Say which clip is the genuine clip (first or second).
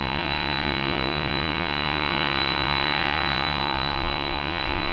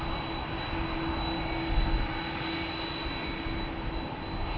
second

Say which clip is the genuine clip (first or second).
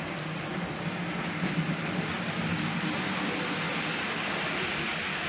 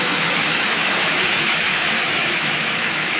first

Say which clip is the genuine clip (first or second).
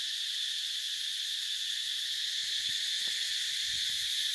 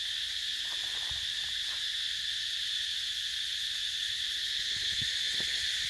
second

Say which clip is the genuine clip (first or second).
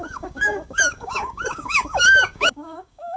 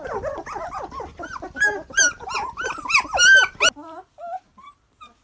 second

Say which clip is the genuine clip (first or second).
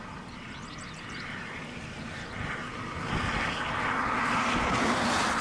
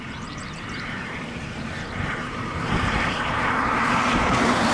first